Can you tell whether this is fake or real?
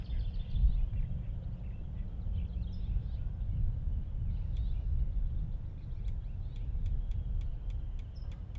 real